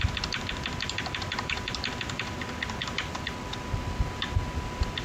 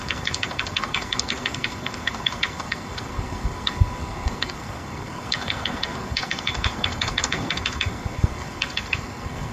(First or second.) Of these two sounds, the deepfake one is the second